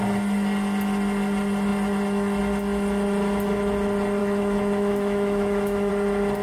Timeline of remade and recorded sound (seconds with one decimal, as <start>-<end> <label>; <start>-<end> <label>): 0.0-4.2 recorded; 4.2-5.9 remade; 5.9-6.4 recorded